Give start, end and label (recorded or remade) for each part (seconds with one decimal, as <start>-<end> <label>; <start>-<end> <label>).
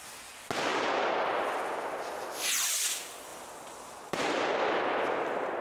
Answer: 0.0-5.6 recorded